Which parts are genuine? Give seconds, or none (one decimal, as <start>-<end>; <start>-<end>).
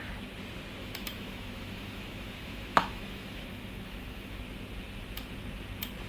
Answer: 0.0-0.8; 4.4-6.1